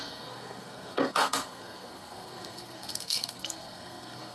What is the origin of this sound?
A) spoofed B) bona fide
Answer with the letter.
A